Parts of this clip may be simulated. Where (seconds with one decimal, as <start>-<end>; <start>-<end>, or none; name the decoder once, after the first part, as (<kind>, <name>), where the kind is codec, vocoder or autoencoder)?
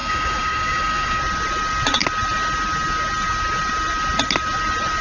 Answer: 0.0-1.2 (codec, DAC)